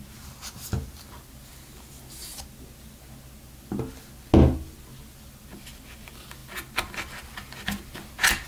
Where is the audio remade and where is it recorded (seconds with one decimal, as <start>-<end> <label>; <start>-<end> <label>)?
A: 0.0-8.5 recorded